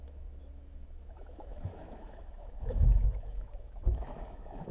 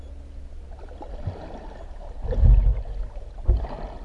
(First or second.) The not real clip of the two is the first